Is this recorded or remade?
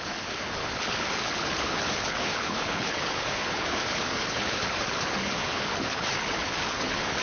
remade